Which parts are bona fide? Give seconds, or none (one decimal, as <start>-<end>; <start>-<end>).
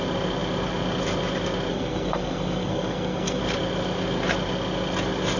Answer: 0.0-1.7; 3.4-5.4